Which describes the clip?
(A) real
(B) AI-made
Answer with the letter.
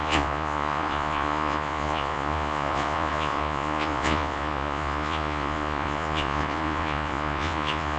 B